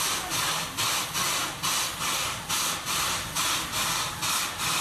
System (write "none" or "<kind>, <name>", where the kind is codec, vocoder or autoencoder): none